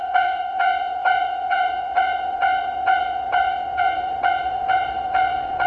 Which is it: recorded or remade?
remade